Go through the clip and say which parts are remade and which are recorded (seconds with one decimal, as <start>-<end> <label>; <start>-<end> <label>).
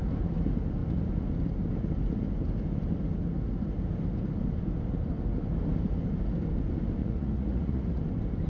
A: 0.0-7.0 recorded; 7.0-8.0 remade; 8.0-8.5 recorded